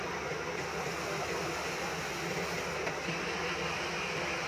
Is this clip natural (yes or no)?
yes